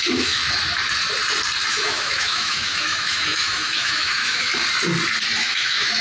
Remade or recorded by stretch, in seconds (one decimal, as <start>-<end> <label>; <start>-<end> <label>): 0.0-0.4 remade; 0.4-1.7 recorded; 1.7-4.5 remade; 4.5-5.4 recorded; 5.4-6.0 remade